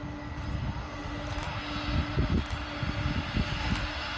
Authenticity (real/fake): real